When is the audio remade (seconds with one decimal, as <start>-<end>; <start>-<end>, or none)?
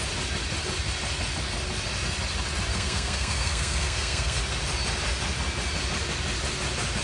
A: 2.7-4.4